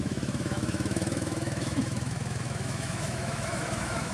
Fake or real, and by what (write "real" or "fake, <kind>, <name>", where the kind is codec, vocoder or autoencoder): fake, autoencoder, DAC-VAE